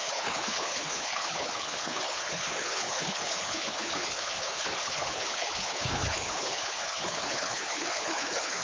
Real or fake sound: fake